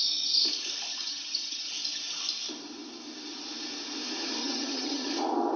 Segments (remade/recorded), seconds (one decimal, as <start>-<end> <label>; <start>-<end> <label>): 0.0-0.9 recorded; 0.9-1.7 remade; 1.7-4.4 recorded; 4.4-5.1 remade; 5.1-5.6 recorded